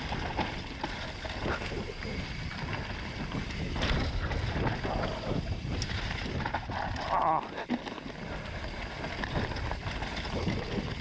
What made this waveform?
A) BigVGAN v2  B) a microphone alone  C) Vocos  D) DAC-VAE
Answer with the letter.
B